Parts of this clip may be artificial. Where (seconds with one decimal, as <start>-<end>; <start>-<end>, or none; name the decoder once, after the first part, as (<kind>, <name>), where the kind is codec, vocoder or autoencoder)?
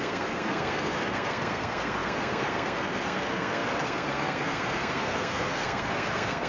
0.0-6.5 (codec, SNAC)